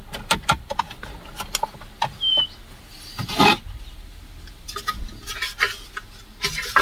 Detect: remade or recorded recorded